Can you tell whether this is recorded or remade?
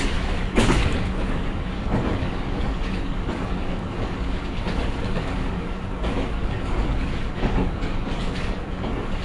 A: remade